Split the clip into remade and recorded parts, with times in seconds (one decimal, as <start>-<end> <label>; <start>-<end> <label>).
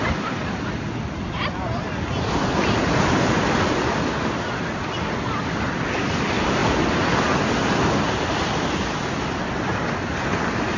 0.0-10.8 recorded